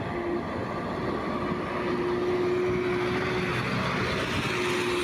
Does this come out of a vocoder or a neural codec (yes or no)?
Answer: no